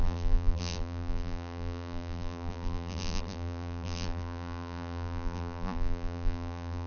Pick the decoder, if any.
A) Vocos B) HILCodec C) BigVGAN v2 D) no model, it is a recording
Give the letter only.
C